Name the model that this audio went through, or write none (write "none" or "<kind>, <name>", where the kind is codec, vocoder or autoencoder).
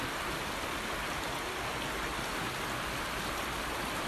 none